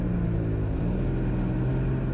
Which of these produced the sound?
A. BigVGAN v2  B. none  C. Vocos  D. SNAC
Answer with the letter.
B